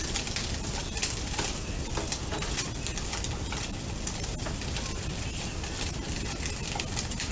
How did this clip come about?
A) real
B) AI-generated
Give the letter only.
A